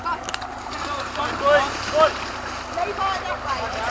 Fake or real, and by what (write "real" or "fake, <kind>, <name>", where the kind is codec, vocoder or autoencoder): real